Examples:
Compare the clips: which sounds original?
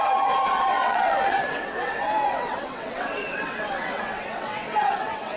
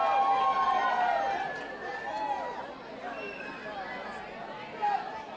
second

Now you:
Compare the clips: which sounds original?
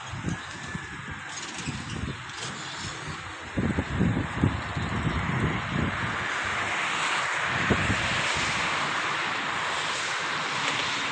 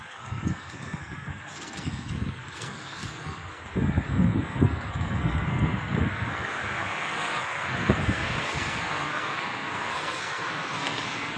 first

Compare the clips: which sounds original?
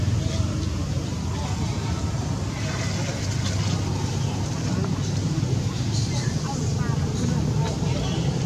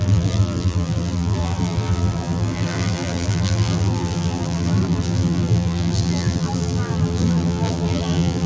first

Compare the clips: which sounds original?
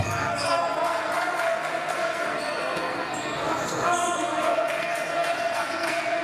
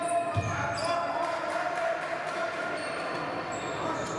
second